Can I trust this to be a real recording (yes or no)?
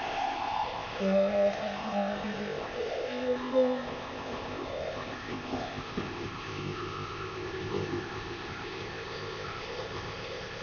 no